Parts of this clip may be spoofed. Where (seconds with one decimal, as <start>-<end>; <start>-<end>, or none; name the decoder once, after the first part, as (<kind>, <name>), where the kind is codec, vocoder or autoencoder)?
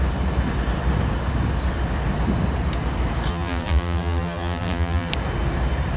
3.3-5.1 (vocoder, BigVGAN v2)